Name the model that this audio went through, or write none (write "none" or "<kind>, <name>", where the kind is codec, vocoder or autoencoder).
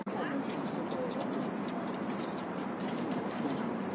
vocoder, BigVGAN v2